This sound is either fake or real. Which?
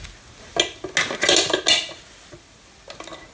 real